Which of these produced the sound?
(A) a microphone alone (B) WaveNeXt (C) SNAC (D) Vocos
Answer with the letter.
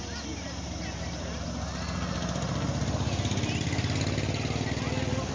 A